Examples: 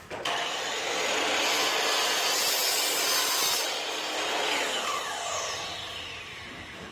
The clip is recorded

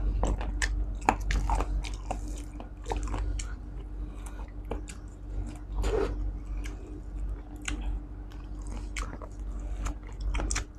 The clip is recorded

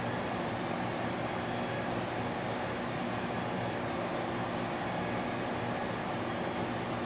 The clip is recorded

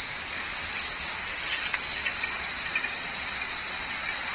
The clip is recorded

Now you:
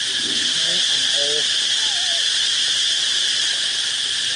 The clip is recorded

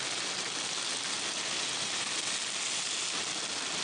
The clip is recorded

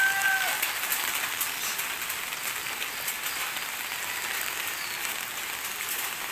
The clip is recorded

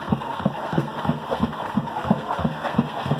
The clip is remade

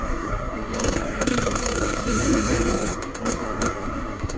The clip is remade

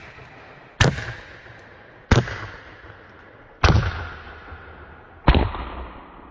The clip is recorded